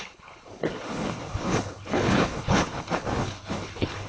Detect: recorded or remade remade